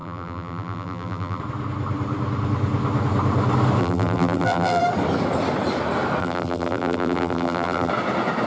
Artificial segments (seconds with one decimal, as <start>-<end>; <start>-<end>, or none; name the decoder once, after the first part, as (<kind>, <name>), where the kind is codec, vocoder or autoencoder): 0.0-1.4 (vocoder, BigVGAN v2); 3.8-4.8; 6.2-7.9